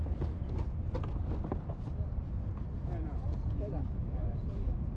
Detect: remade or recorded recorded